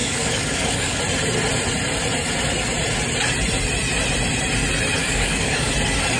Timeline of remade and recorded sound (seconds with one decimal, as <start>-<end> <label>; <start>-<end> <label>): 0.0-1.0 remade; 1.0-5.0 recorded; 5.0-5.7 remade; 5.7-6.2 recorded